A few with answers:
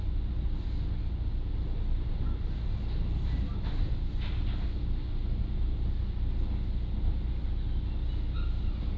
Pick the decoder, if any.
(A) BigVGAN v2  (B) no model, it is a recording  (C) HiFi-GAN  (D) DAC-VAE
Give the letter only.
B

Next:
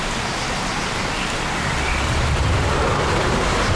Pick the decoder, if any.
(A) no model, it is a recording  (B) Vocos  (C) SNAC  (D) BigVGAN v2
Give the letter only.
A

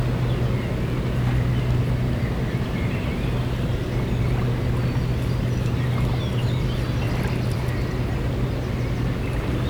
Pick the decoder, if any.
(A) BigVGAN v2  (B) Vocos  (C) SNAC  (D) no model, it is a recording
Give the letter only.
D